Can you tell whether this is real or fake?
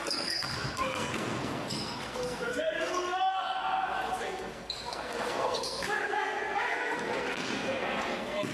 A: fake